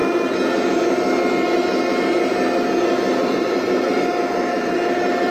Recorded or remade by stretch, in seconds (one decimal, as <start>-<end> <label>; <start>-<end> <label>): 0.0-3.2 recorded; 3.2-5.3 remade